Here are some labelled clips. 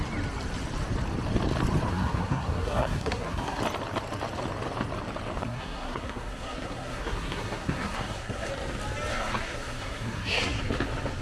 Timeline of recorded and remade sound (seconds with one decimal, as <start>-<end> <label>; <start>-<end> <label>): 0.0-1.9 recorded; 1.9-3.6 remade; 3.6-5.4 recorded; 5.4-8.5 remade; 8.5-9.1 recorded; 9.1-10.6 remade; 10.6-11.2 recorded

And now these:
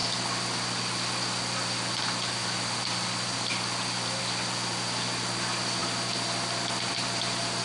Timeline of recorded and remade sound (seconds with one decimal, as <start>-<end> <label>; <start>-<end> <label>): 0.0-7.6 recorded

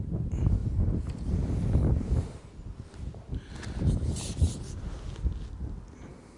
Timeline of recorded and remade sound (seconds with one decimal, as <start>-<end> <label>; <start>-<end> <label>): 0.0-6.4 recorded

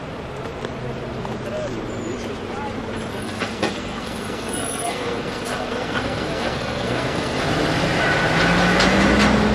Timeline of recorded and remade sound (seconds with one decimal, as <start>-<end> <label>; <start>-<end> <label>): 0.0-3.1 recorded; 3.1-7.4 remade; 7.4-9.5 recorded

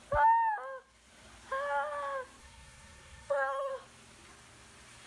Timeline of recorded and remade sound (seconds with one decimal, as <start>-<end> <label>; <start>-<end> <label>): 0.0-2.4 recorded; 2.4-3.7 remade; 3.7-5.1 recorded